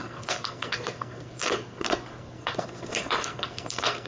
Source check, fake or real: fake